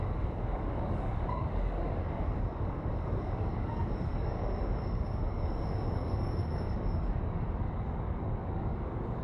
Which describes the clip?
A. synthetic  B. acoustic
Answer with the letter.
A